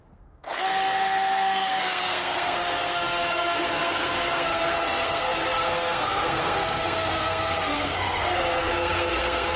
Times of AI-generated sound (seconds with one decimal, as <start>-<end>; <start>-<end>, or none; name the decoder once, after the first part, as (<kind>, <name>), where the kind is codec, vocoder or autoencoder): 0.0-9.6 (codec, SNAC)

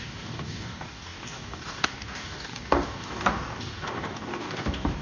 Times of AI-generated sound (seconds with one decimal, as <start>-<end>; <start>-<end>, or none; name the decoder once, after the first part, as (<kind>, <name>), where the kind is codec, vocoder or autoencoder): 0.0-5.0 (codec, DAC)

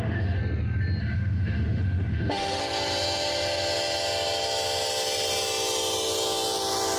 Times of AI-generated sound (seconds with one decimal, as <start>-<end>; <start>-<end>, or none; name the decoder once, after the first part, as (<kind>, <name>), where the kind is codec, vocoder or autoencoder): 0.0-0.4 (autoencoder, DAC-VAE); 1.0-2.6

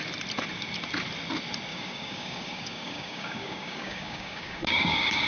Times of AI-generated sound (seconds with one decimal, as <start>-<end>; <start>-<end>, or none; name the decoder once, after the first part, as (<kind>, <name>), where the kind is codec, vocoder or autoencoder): 1.7-5.3 (codec, DAC)

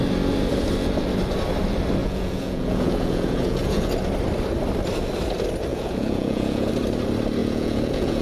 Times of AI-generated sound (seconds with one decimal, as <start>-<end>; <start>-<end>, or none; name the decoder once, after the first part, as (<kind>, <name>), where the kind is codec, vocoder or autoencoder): 2.0-3.9 (vocoder, Vocos); 5.7-6.7; 7.4-8.2

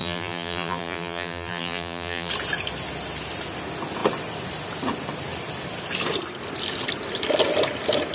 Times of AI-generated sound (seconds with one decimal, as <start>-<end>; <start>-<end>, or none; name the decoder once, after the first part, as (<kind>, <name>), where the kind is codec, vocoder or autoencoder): 0.0-2.3 (vocoder, BigVGAN v2)

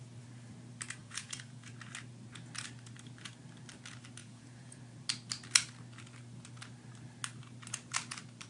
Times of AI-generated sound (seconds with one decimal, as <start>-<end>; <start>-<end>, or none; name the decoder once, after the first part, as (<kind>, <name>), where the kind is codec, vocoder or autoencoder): 1.0-1.7 (vocoder, Vocos); 4.2-4.8